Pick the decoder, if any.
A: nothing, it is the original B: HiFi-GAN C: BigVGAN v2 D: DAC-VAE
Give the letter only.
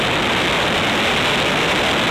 A